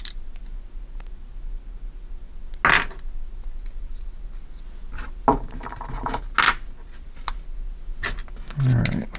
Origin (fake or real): real